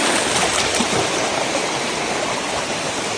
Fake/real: real